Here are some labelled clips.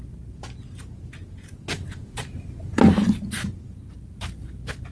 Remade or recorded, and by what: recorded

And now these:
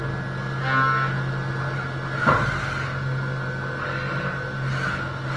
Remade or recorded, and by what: recorded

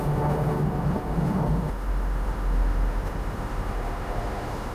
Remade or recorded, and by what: remade, autoencoder, DAC-VAE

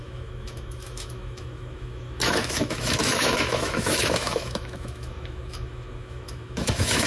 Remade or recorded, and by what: remade, autoencoder, DAC-VAE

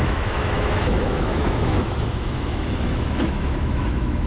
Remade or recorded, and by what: remade, autoencoder, DAC-VAE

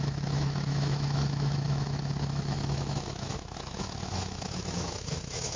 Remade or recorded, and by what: remade, autoencoder, DAC-VAE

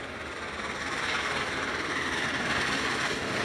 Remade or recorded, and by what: recorded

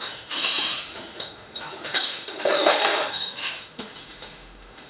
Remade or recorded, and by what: remade, autoencoder, DAC-VAE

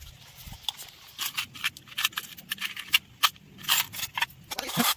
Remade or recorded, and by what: recorded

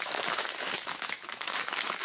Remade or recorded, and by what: remade, autoencoder, DAC-VAE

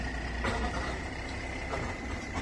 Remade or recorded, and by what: recorded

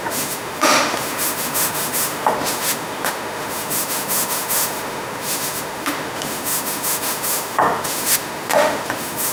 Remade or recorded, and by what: remade, autoencoder, DAC-VAE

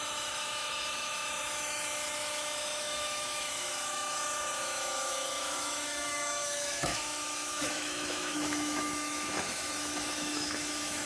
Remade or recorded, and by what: remade, autoencoder, DAC-VAE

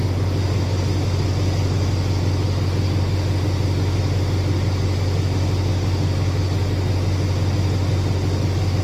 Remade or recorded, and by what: recorded